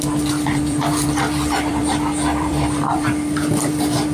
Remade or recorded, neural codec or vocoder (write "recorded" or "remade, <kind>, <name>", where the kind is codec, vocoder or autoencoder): remade, vocoder, BigVGAN v2